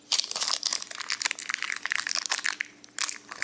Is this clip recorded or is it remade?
recorded